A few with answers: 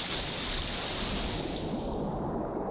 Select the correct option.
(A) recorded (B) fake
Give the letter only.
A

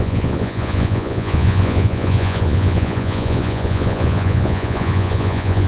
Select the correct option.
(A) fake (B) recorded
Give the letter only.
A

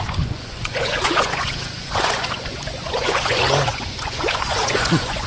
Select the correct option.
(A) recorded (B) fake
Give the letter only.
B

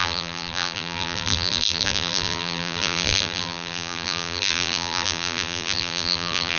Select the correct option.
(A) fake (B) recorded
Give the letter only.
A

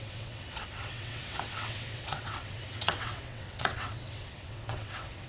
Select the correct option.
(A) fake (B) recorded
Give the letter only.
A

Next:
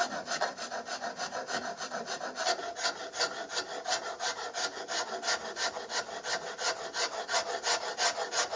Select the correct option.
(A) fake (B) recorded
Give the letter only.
B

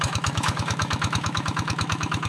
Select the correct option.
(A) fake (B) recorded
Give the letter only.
A